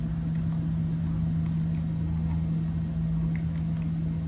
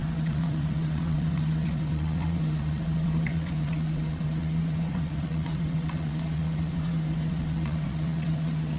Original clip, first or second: first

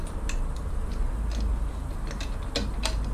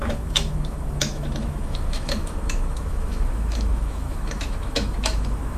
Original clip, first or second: first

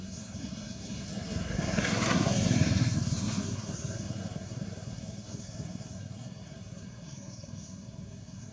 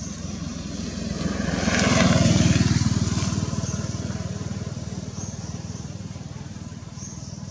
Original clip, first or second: second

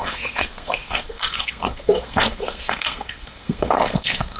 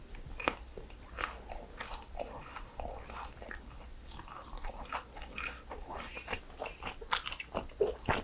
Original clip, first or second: second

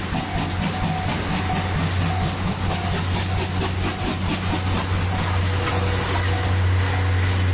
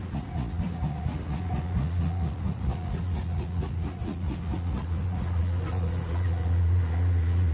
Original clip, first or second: first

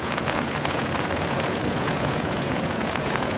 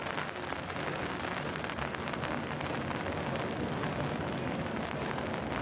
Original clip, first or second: second